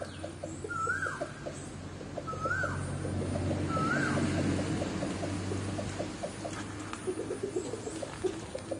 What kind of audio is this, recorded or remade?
recorded